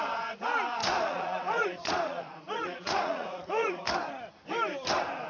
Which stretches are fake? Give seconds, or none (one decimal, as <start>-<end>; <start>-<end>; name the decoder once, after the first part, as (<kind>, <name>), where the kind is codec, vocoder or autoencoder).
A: 0.8-3.8 (vocoder, Vocos)